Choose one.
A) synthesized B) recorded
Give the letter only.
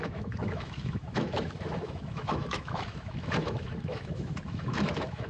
A